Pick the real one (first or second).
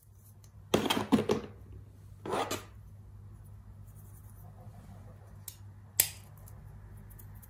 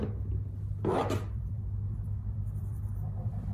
first